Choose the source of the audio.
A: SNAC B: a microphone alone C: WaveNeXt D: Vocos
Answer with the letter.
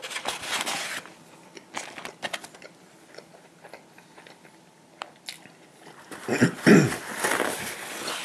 B